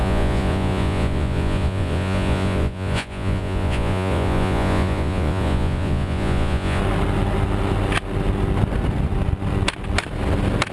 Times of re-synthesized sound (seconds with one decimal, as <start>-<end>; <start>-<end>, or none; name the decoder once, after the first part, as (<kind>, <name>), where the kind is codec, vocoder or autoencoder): 0.0-6.8 (vocoder, Vocos)